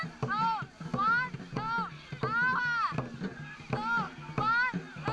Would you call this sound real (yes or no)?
yes